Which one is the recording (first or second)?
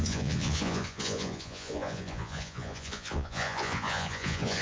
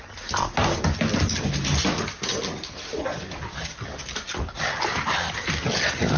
second